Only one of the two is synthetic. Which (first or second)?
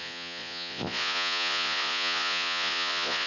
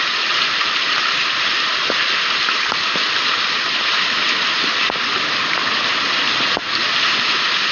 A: first